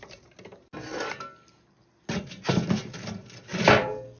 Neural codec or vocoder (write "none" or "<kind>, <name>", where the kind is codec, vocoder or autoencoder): none